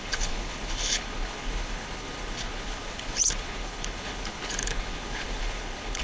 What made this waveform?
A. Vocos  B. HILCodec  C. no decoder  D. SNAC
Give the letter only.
B